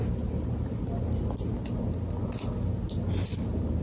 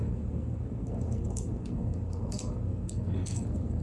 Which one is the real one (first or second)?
first